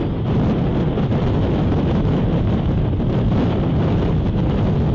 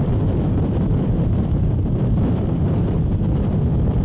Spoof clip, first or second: second